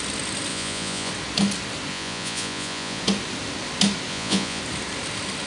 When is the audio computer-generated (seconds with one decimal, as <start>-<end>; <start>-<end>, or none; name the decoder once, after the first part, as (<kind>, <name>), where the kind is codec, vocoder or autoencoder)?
0.5-1.1 (vocoder, Vocos); 1.9-3.0; 4.1-4.6